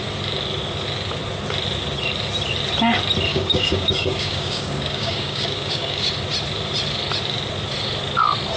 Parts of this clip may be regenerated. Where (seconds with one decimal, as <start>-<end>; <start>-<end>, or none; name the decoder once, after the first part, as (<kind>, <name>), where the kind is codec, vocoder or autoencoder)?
3.3-6.1 (codec, DAC)